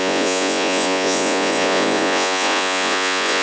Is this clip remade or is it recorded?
remade